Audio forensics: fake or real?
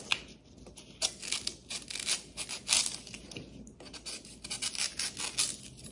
real